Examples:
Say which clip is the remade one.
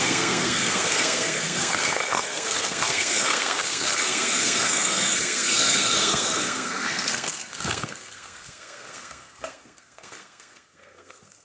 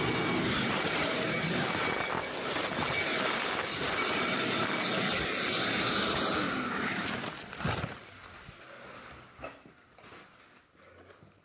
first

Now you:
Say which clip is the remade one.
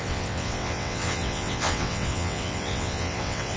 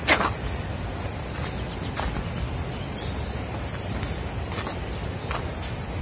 first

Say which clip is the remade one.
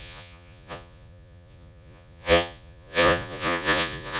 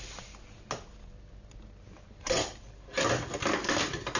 first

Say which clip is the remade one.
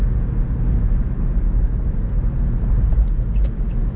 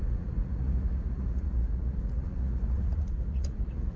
second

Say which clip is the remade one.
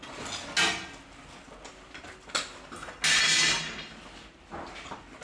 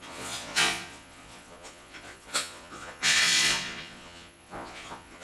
second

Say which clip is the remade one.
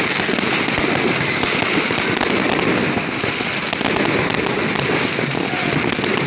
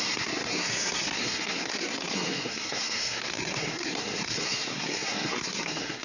second